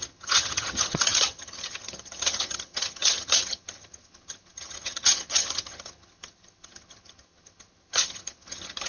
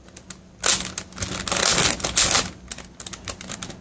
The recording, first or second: second